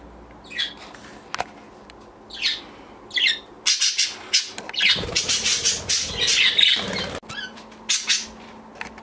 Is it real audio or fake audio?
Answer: real